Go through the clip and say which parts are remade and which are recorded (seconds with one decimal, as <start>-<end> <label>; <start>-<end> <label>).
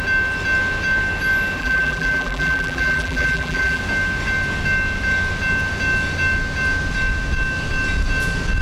0.0-1.6 recorded; 1.6-3.8 remade; 3.8-8.6 recorded